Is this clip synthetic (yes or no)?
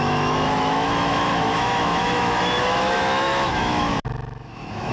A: yes